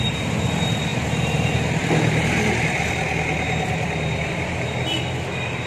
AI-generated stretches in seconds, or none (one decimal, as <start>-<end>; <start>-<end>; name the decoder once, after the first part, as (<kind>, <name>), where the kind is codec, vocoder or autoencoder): none